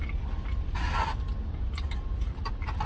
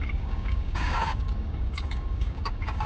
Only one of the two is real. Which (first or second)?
first